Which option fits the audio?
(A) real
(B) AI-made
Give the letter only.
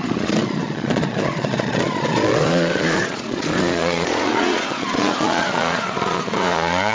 B